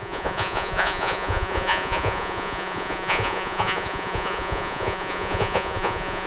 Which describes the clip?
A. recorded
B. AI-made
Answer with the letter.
B